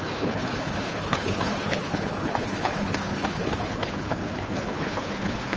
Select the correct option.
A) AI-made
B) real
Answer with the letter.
A